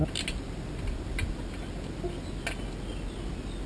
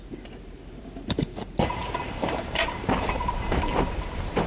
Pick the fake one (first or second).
second